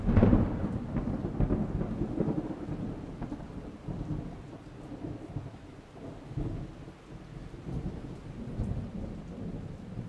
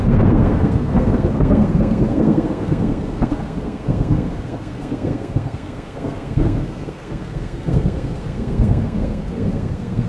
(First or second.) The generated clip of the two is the second